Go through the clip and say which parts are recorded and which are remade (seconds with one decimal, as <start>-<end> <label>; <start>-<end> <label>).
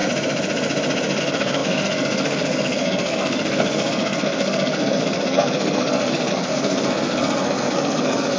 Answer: 0.0-1.2 recorded; 1.2-8.4 remade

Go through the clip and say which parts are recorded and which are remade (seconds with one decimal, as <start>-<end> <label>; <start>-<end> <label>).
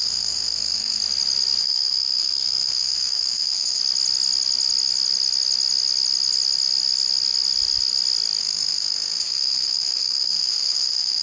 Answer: 0.0-1.0 remade; 1.0-1.6 recorded; 1.6-3.8 remade; 3.8-8.4 recorded; 8.4-11.2 remade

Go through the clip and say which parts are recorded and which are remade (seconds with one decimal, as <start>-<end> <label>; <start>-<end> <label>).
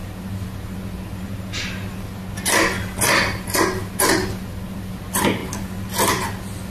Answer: 0.0-6.7 recorded